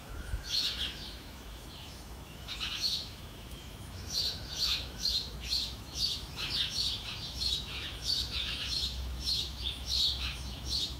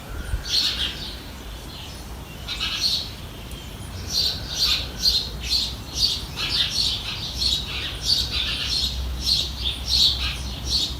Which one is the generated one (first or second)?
first